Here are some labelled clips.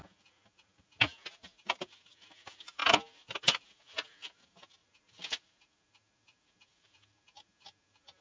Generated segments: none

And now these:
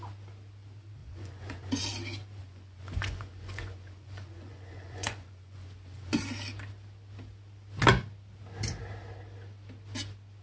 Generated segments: 1.0-1.8 (vocoder, Vocos); 2.4-6.2